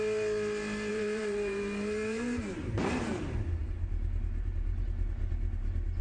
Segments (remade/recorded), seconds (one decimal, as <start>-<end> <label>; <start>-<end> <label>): 0.0-0.9 recorded; 0.9-2.8 remade; 2.8-6.0 recorded